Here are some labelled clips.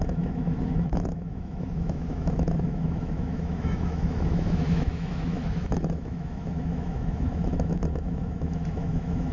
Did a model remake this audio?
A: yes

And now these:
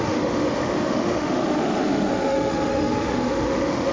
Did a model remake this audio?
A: yes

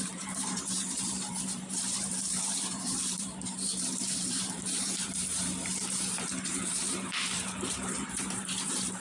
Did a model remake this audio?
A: yes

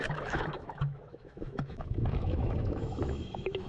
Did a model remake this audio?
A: yes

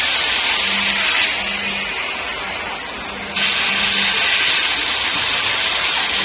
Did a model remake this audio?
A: no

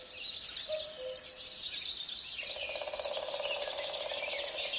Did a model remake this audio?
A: no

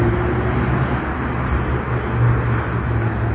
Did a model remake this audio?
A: no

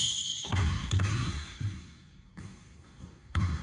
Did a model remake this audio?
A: yes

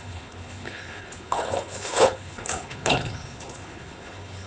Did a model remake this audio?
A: yes